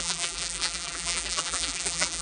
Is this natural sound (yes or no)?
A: no